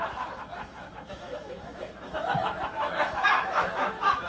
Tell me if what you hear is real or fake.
fake